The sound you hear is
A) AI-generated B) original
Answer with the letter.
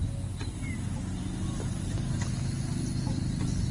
B